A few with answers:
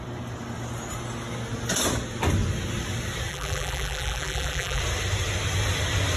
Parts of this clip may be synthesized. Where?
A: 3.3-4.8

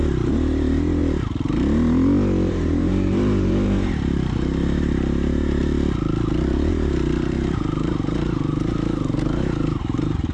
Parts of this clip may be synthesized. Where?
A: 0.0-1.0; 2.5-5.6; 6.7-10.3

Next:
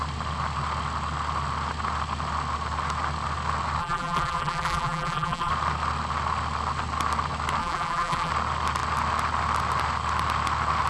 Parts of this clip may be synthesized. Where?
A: 3.8-5.5; 7.6-8.3